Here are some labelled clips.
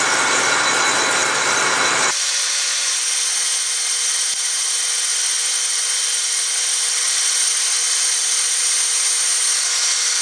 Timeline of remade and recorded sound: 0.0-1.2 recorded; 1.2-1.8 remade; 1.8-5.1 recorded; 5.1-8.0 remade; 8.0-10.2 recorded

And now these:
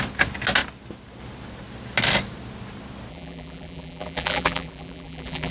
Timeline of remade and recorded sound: 0.0-3.1 recorded; 3.1-5.5 remade

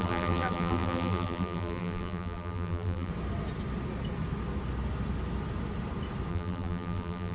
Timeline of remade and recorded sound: 0.0-3.1 remade; 3.1-6.3 recorded; 6.3-7.3 remade

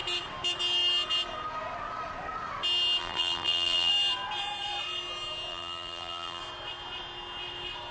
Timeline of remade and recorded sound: 0.0-3.0 recorded; 3.0-3.9 remade; 3.9-5.5 recorded; 5.5-6.4 remade; 6.4-7.9 recorded

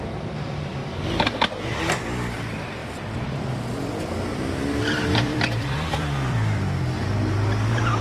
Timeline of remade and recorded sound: 0.0-0.8 remade; 0.8-1.8 recorded; 1.8-8.0 remade

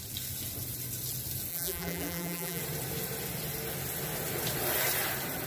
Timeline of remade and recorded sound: 0.0-1.5 recorded; 1.5-2.6 remade; 2.6-5.5 recorded

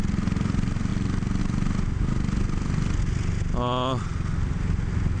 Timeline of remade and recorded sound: 0.0-5.2 recorded

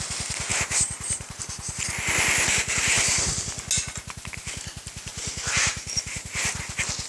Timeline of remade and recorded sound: 0.0-0.5 recorded; 0.5-1.4 remade; 1.4-5.1 recorded; 5.1-6.2 remade; 6.2-7.1 recorded